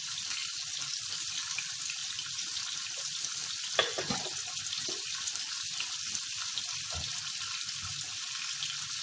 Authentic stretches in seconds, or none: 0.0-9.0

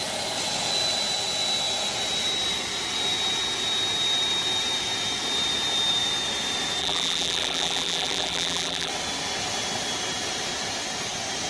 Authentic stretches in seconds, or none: 0.0-6.8; 8.9-11.5

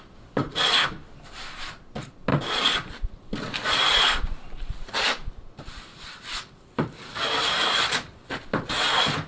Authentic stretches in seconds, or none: 0.0-0.4; 0.9-2.3; 7.3-9.3

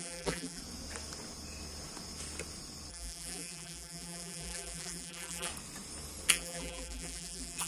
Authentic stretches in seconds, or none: 0.6-2.9; 5.5-6.3

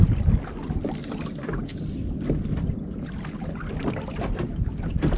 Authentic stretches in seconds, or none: 0.0-5.2

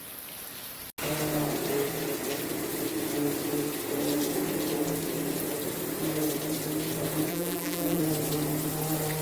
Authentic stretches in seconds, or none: 0.0-7.3; 8.0-9.2

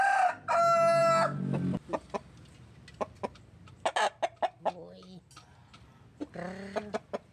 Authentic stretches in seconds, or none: 0.0-7.3

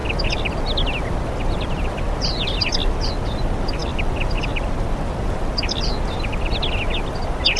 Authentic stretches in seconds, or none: 0.0-7.6